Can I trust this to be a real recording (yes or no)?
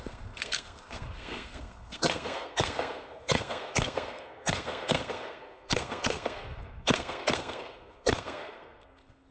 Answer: no